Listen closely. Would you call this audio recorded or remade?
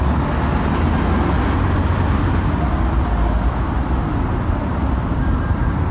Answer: recorded